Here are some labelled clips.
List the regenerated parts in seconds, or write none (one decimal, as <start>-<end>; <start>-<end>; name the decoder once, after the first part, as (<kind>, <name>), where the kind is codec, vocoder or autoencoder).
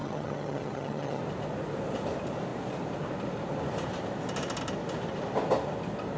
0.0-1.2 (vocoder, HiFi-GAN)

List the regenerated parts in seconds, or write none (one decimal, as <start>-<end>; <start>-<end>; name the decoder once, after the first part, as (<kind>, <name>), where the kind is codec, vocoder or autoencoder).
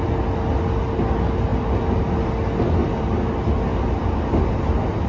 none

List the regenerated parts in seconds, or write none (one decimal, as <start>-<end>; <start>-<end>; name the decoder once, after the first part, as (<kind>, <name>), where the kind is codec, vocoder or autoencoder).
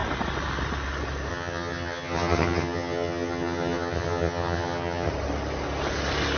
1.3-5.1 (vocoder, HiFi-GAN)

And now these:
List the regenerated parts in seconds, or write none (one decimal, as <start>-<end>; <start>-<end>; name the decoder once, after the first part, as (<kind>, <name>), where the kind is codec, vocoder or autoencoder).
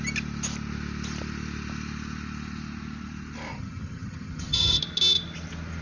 3.5-4.8 (vocoder, HiFi-GAN)